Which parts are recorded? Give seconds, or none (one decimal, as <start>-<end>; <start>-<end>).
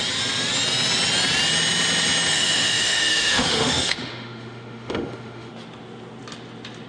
0.0-2.3; 5.5-6.9